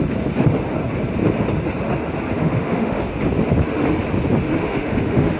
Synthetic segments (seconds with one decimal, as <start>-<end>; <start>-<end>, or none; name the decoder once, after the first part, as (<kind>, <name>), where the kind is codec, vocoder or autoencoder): 2.4-3.1 (autoencoder, DAC-VAE); 4.5-5.4